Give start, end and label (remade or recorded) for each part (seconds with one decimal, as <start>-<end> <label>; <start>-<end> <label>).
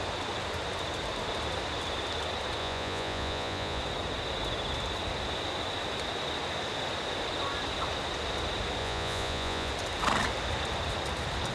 0.0-2.6 recorded; 2.6-3.8 remade; 3.8-8.8 recorded; 8.8-9.7 remade; 9.7-11.5 recorded